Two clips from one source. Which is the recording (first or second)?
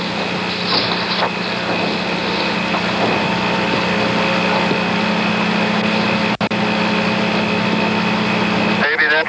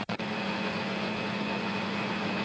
first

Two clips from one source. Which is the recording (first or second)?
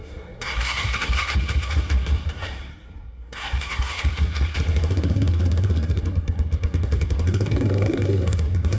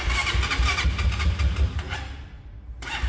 second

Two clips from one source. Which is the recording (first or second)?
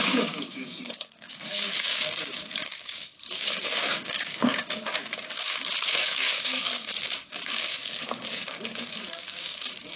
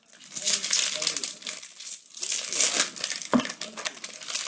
second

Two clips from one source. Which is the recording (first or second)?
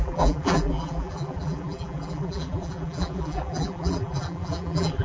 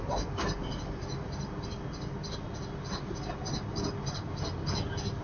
second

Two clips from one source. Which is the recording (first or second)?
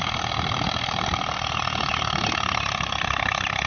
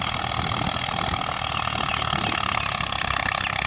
second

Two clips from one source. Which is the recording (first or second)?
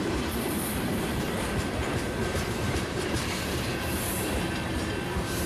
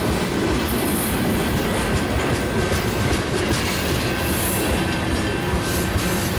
second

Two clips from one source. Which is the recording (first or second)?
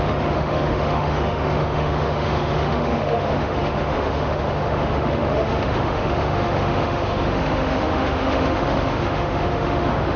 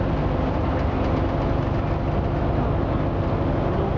second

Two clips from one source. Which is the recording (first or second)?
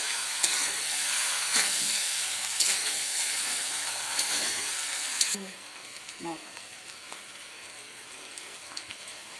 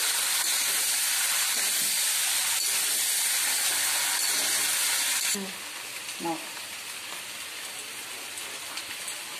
second